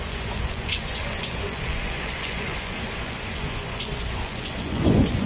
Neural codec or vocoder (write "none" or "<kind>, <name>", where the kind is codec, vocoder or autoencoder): vocoder, Vocos